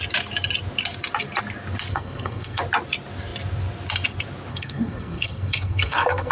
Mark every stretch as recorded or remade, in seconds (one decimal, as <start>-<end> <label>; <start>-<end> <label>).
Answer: 0.0-1.9 recorded; 1.9-2.6 remade; 2.6-4.5 recorded; 4.5-6.3 remade